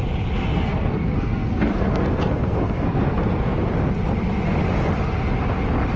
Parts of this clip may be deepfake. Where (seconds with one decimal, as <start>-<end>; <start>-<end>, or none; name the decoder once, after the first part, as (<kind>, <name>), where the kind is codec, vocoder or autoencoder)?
0.4-3.7 (codec, SNAC)

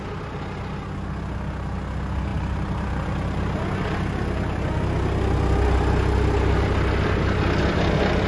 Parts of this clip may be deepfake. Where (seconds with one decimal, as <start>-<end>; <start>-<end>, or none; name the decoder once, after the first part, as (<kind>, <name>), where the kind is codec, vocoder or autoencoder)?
2.3-3.4 (vocoder, BigVGAN v2)